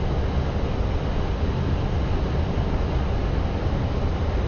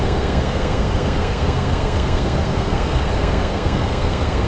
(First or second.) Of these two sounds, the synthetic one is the second